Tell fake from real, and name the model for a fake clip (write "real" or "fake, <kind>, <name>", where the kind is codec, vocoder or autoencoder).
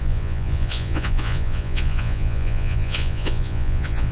fake, vocoder, Vocos